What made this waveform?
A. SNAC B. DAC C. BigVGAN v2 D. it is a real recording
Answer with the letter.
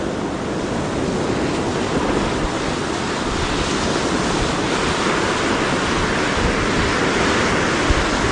D